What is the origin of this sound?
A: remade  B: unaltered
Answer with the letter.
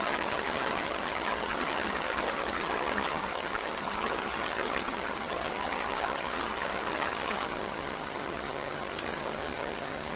A